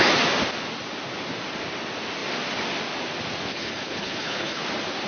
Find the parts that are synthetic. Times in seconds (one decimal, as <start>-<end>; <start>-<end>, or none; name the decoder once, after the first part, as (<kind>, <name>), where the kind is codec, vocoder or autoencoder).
3.5-4.6 (codec, HILCodec)